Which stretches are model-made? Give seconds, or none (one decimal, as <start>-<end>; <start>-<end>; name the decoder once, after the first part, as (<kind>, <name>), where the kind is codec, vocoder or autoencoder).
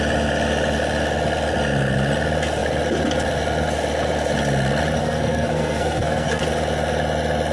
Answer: 5.0-6.4 (codec, SNAC)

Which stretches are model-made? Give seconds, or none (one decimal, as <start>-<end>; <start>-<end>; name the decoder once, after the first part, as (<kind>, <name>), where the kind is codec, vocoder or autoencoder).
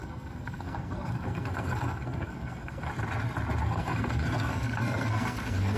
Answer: 0.0-2.9 (codec, SNAC); 3.6-5.8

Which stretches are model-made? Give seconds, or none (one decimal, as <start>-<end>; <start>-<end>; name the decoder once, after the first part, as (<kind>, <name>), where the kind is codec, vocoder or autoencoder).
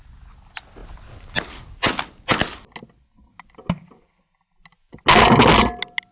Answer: none